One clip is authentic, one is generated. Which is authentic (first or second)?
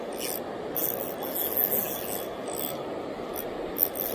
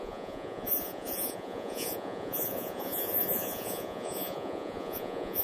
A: first